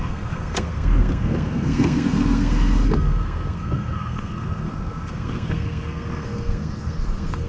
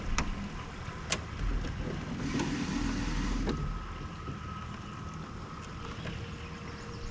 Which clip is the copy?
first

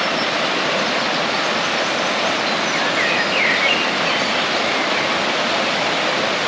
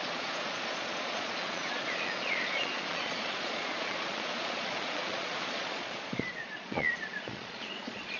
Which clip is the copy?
second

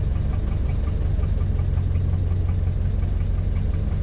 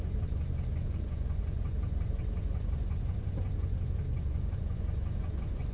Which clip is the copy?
second